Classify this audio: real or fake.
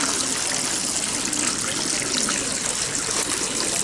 real